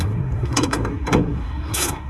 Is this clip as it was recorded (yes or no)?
no